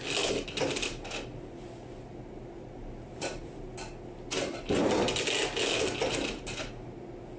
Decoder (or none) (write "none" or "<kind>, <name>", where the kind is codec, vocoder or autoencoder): none